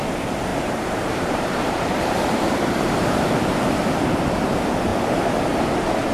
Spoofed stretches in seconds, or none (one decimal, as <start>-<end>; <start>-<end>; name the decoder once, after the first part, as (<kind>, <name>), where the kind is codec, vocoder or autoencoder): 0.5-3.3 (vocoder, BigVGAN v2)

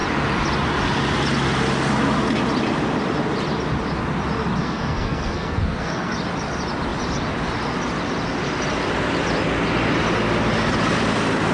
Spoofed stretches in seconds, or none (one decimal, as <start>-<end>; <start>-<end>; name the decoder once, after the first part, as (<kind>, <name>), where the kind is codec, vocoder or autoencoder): 4.6-6.1 (codec, SNAC)

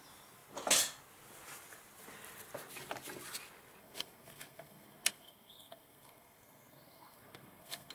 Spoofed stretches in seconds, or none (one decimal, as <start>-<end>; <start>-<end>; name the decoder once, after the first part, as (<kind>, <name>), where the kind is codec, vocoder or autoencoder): 3.8-7.9 (codec, SNAC)

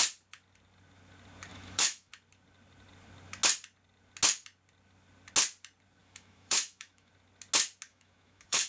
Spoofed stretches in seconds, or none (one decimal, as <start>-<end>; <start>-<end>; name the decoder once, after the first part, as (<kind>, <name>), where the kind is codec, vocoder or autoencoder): 1.5-2.1 (autoencoder, DAC-VAE); 6.0-7.1; 7.9-8.7

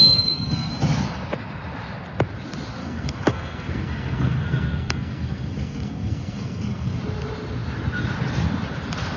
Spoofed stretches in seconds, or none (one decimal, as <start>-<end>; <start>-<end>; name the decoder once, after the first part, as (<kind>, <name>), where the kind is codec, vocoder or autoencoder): 0.0-0.7 (codec, SNAC); 2.8-7.0

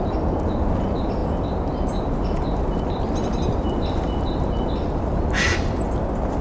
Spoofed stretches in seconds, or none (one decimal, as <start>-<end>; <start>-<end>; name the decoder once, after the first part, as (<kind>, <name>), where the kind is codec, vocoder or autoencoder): none

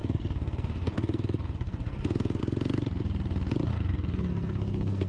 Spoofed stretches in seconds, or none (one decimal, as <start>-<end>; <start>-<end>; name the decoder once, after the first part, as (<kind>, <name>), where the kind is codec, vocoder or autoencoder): 0.0-2.4 (codec, SNAC); 3.7-5.1

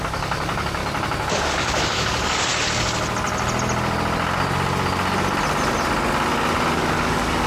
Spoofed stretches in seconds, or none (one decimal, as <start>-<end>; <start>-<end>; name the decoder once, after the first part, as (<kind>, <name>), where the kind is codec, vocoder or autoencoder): 0.0-0.8 (codec, DAC); 1.3-2.5; 6.8-7.5